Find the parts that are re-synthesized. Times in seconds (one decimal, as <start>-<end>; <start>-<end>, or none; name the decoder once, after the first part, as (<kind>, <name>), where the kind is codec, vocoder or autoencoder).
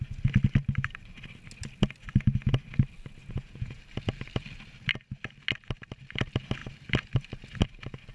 3.2-3.8 (vocoder, Vocos)